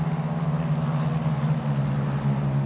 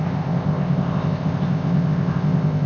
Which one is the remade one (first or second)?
second